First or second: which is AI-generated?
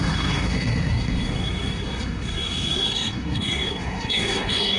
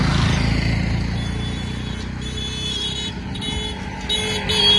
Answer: first